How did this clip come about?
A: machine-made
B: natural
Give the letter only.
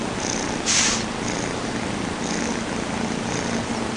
B